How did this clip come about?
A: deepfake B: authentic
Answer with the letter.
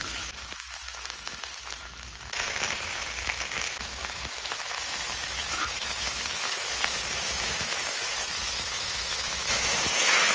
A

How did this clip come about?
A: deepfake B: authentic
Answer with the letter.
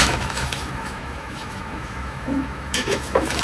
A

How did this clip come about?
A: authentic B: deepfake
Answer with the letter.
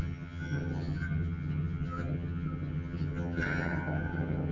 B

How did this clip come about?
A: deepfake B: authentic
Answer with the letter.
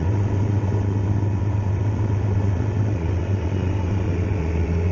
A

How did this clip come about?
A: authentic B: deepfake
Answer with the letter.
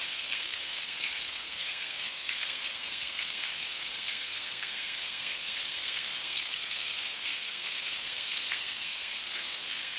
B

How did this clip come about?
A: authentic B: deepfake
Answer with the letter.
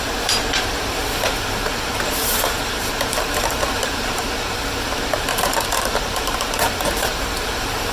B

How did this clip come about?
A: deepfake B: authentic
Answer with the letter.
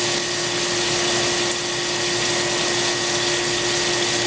B